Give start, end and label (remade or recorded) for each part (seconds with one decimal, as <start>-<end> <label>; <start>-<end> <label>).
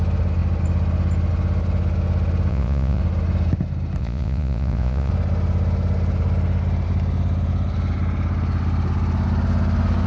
0.0-2.5 recorded; 2.5-3.0 remade; 3.0-4.0 recorded; 4.0-5.1 remade; 5.1-10.1 recorded